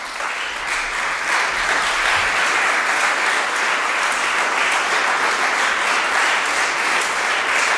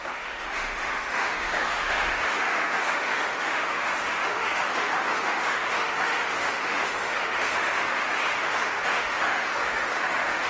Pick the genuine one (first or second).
first